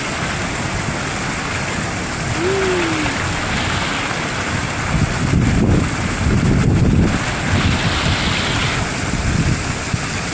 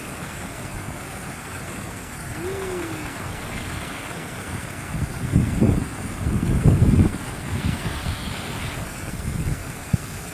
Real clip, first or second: first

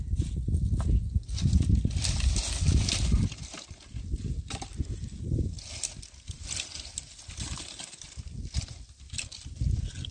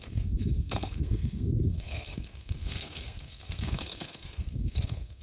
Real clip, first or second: first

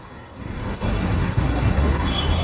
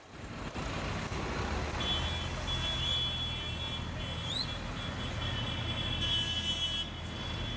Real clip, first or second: second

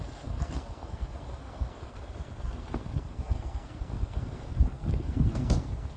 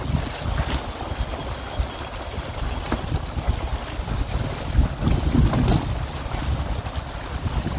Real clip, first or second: second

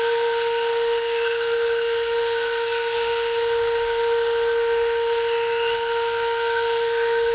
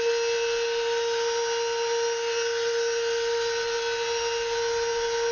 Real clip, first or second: second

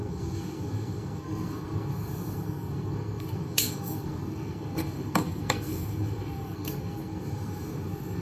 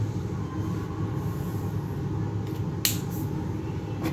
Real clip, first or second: second